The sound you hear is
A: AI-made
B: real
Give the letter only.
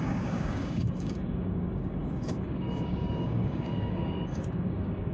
A